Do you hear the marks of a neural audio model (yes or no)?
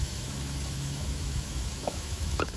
yes